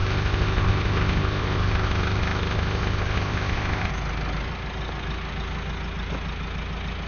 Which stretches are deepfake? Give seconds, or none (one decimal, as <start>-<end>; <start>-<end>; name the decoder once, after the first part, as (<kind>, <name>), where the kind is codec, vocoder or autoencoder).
0.0-3.9 (codec, ZipCodec)